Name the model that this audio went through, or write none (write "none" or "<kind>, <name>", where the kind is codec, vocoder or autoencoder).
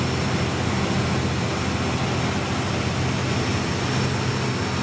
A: none